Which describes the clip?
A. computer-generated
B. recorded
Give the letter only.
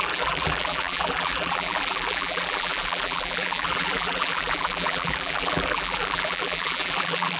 A